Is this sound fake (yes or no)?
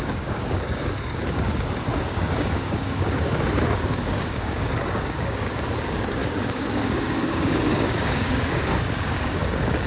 yes